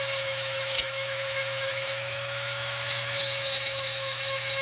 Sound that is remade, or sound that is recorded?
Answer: remade